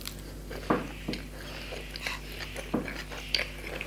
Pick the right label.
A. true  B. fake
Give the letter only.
A